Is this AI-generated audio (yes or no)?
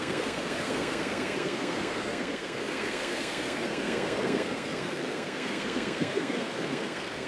yes